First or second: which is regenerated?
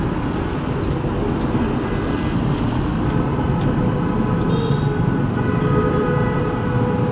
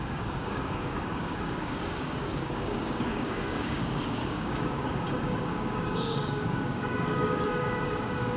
second